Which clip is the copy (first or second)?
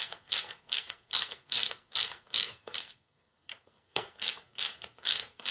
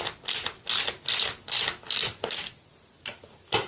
first